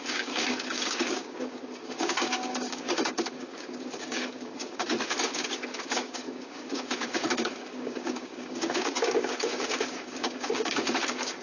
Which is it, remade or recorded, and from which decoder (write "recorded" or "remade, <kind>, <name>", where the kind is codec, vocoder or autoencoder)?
remade, codec, DAC